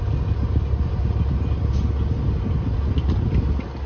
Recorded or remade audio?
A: recorded